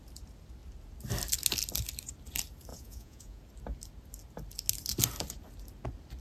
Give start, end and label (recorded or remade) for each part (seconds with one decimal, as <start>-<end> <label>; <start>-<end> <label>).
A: 0.0-2.7 recorded; 2.7-3.4 remade; 3.4-6.2 recorded